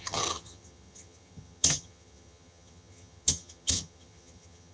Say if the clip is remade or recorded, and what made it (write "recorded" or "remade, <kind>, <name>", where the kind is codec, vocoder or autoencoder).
remade, vocoder, HiFi-GAN